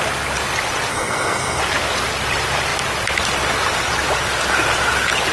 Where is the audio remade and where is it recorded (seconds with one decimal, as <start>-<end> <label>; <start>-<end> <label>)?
0.0-0.9 recorded; 0.9-1.6 remade; 1.6-5.3 recorded